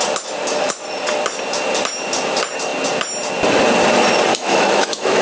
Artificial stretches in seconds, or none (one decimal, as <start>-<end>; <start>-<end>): 4.3-5.2

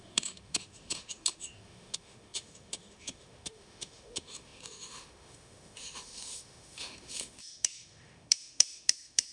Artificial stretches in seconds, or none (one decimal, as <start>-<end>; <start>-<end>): 0.0-9.3

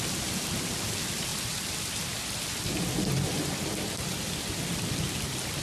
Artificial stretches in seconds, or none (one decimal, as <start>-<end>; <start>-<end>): none

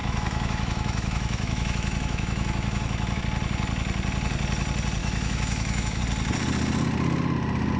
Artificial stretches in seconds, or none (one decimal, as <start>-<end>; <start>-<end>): 0.0-3.2; 5.0-6.0

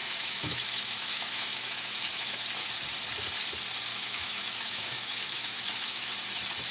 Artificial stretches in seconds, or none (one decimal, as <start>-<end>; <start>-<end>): 0.0-2.4; 3.9-6.1

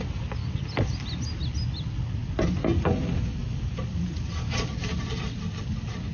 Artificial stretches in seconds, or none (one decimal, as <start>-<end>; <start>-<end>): none